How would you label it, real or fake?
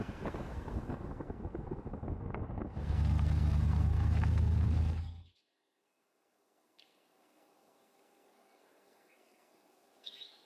fake